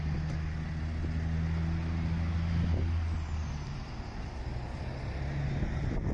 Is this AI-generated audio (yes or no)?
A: no